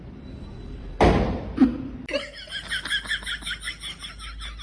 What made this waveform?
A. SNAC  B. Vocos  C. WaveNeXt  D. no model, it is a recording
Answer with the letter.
D